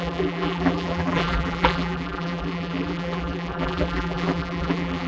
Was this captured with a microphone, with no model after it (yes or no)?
no